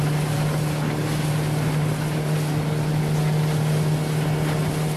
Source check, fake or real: real